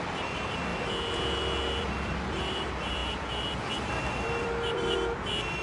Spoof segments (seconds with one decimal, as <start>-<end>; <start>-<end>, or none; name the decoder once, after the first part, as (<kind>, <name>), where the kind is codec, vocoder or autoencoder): 0.0-0.7 (vocoder, BigVGAN v2); 1.8-5.6